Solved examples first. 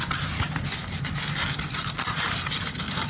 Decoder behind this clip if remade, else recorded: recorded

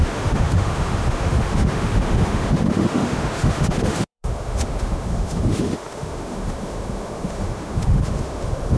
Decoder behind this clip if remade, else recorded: remade, autoencoder, DAC-VAE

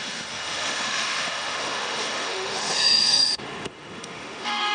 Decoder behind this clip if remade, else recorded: remade, autoencoder, DAC-VAE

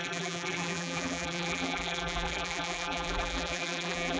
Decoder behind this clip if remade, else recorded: remade, vocoder, BigVGAN v2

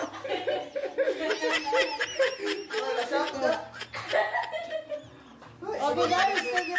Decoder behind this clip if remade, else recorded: recorded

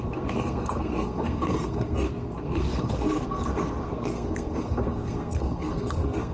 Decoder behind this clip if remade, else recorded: remade, codec, SNAC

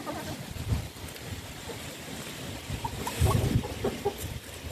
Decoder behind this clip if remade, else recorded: recorded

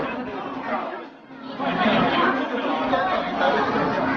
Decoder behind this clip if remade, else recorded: recorded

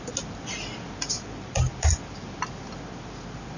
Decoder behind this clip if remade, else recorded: recorded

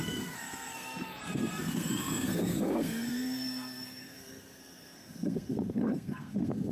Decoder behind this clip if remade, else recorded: remade, codec, SNAC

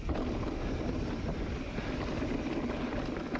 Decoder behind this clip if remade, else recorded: recorded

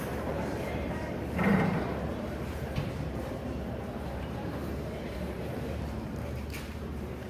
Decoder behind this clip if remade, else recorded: remade, vocoder, BigVGAN v2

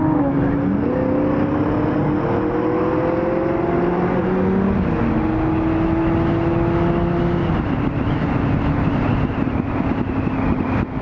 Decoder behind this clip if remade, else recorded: recorded